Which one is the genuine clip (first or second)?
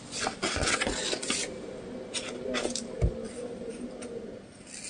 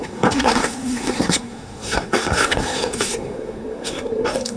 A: first